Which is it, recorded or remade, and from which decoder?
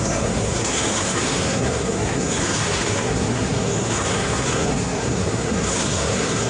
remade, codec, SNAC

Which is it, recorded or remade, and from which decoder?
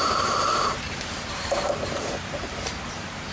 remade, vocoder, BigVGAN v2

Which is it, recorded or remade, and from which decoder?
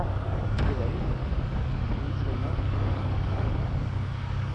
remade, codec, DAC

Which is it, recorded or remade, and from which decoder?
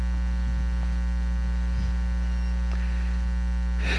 recorded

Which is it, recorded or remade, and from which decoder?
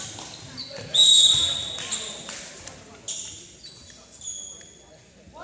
recorded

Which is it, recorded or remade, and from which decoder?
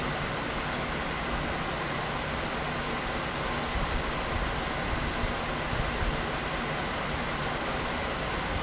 recorded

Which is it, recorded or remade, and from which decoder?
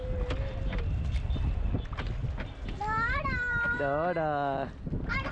recorded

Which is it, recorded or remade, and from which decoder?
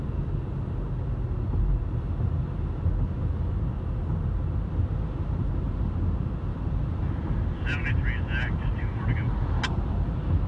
recorded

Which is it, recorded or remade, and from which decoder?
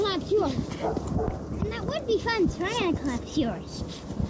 recorded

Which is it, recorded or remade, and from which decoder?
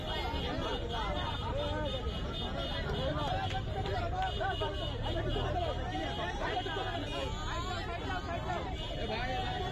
recorded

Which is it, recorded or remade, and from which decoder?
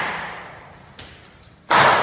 recorded